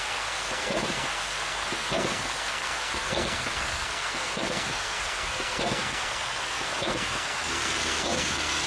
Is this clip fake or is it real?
fake